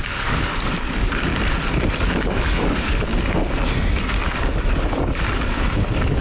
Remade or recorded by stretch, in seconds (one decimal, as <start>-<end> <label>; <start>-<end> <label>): 0.0-1.3 remade; 1.3-2.1 recorded; 2.1-3.1 remade; 3.1-3.9 recorded; 3.9-6.2 remade